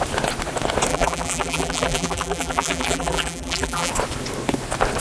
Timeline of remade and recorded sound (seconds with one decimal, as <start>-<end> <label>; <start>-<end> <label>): 0.0-0.9 recorded; 0.9-3.9 remade; 3.9-5.0 recorded